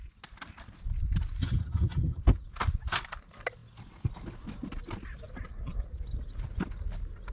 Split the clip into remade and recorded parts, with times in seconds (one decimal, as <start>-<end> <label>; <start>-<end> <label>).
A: 0.0-1.4 recorded; 1.4-2.2 remade; 2.2-7.3 recorded